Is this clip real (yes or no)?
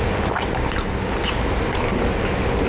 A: yes